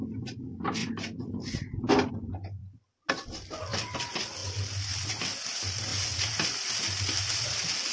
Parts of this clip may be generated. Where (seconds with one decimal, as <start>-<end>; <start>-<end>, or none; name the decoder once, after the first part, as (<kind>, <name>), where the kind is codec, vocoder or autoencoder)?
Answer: none